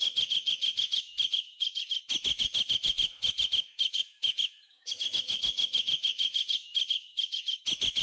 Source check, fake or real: fake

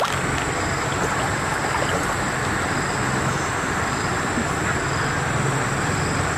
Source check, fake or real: real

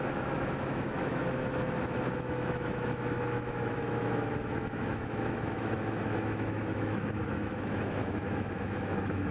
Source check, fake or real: fake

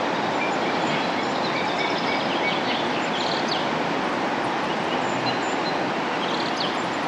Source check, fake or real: real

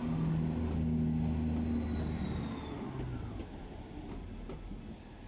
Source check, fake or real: real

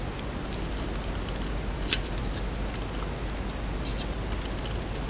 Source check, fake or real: real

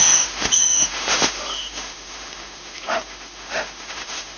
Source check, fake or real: fake